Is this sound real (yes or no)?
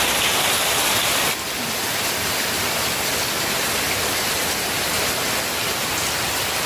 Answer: yes